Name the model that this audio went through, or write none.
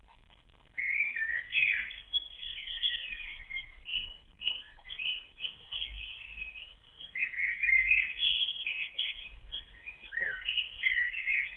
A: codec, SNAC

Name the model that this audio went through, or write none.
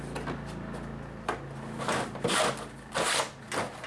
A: none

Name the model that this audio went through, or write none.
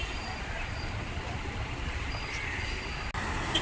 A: none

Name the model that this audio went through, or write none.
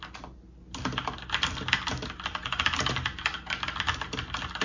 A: none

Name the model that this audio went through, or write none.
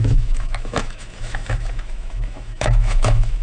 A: autoencoder, DAC-VAE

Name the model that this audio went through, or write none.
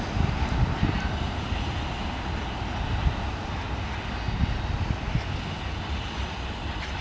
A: none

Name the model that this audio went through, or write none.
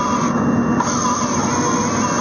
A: none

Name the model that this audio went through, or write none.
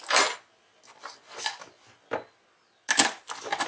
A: none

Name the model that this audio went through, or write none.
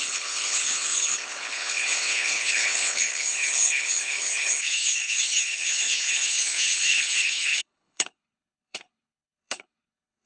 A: codec, HILCodec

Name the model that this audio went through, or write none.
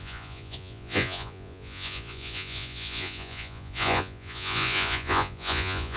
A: vocoder, Vocos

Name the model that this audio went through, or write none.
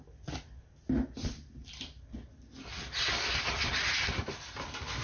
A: none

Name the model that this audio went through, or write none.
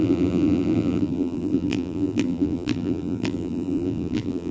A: vocoder, BigVGAN v2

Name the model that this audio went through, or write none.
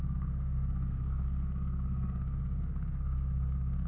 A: codec, SNAC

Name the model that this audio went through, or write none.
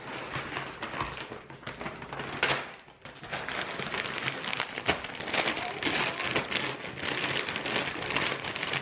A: none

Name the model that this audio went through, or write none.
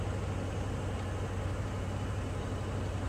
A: none